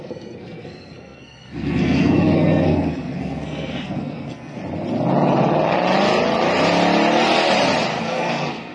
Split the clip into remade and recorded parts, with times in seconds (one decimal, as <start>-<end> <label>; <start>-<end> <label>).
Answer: 0.0-4.6 remade; 4.6-8.0 recorded; 8.0-8.7 remade